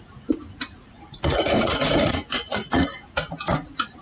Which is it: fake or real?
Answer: fake